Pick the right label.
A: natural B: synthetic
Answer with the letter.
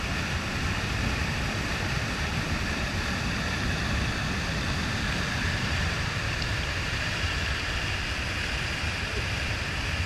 B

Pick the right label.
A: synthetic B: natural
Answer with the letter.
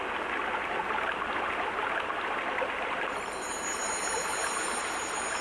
B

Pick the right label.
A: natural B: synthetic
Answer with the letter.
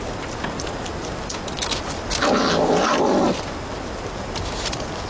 A